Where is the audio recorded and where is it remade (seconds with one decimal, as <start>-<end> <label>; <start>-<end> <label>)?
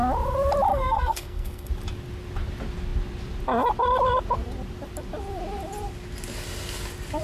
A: 0.0-0.7 recorded; 0.7-1.7 remade; 1.7-7.2 recorded